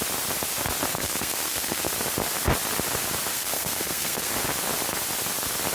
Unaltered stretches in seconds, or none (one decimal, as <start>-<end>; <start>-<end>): 0.0-0.9; 1.9-3.3; 4.3-5.7